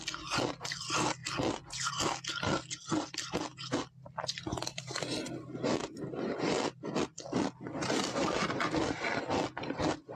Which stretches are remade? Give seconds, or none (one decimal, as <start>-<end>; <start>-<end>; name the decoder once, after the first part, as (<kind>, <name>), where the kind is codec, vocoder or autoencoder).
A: none